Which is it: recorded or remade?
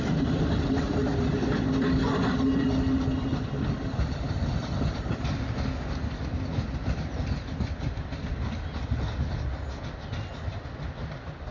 recorded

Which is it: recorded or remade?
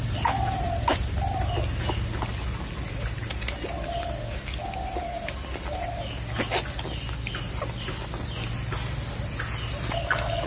recorded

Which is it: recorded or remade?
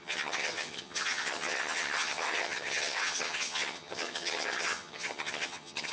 remade